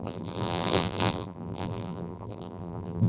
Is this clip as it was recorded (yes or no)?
no